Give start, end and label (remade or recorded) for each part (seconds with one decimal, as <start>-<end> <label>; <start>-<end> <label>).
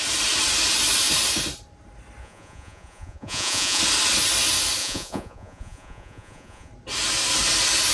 0.0-2.2 recorded; 2.2-3.8 remade; 3.8-4.8 recorded; 4.8-6.7 remade; 6.7-7.9 recorded